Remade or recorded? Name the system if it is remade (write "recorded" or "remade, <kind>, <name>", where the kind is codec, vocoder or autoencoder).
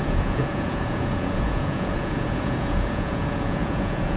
remade, vocoder, Vocos